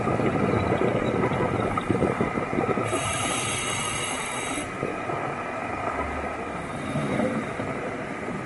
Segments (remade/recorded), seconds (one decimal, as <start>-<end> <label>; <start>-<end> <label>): 0.0-4.9 remade; 4.9-5.8 recorded; 5.8-8.5 remade